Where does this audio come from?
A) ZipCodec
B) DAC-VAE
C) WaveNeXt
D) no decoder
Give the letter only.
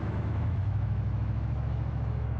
B